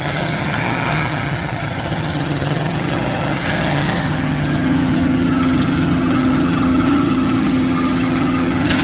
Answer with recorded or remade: remade